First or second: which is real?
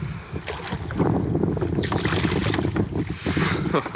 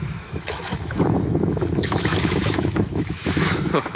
first